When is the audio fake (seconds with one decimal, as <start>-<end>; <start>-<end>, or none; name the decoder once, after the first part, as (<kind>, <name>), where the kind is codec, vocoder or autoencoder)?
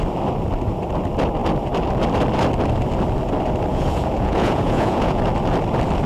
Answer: 3.7-5.2 (vocoder, Vocos)